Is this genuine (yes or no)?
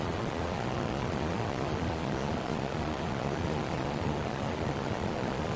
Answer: no